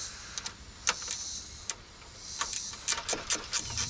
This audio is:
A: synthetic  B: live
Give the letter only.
A